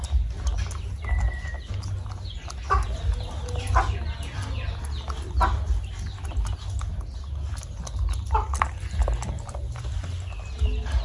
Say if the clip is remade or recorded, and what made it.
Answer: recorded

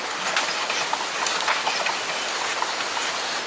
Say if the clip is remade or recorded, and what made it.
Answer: recorded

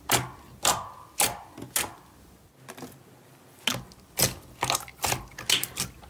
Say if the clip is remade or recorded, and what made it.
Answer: recorded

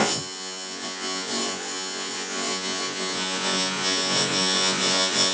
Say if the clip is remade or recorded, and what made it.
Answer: remade, vocoder, Vocos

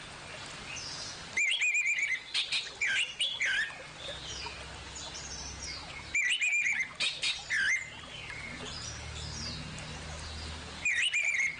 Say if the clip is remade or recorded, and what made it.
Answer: recorded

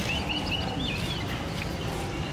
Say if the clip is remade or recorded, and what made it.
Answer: recorded